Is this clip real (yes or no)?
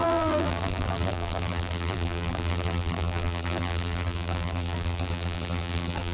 no